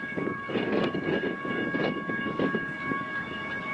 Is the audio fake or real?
fake